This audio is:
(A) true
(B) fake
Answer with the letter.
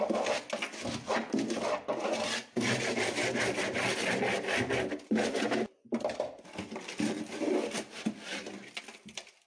A